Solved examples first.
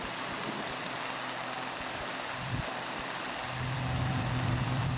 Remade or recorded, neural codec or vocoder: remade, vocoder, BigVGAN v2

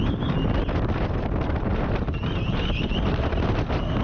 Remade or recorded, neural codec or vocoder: recorded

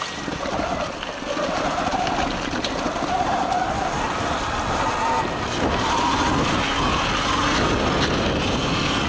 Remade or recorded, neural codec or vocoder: recorded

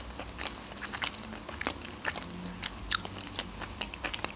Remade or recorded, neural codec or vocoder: recorded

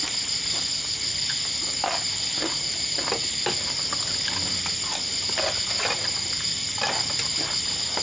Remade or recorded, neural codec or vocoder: recorded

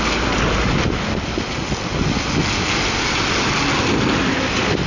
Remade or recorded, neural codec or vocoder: recorded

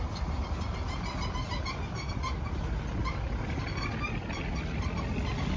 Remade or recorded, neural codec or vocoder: recorded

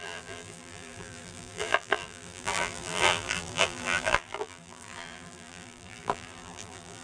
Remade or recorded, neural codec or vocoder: remade, vocoder, BigVGAN v2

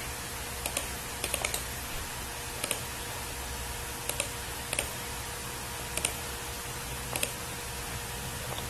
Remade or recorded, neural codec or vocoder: recorded